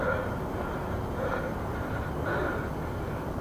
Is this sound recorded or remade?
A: recorded